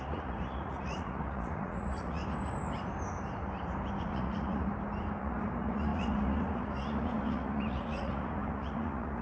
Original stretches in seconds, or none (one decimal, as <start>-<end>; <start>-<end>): 2.2-4.0; 4.7-5.2